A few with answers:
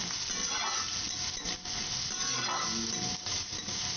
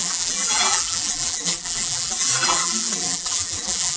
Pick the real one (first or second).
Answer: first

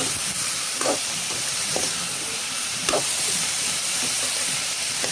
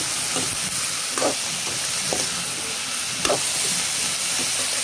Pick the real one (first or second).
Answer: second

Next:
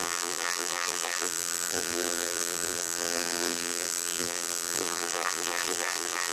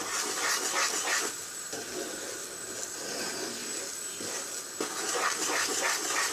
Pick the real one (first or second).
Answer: second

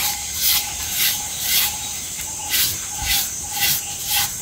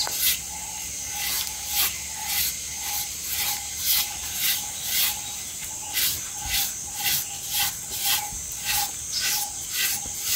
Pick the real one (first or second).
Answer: second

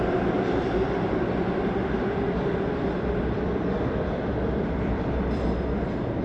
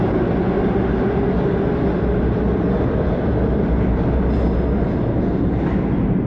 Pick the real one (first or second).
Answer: second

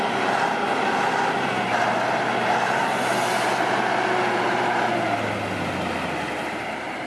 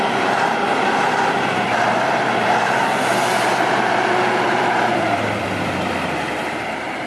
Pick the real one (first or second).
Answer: first